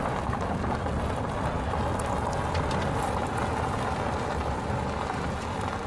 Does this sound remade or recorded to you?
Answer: recorded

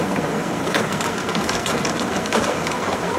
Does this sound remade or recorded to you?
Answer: remade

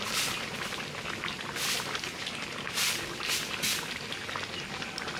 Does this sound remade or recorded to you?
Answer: recorded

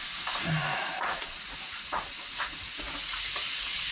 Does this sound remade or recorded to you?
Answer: remade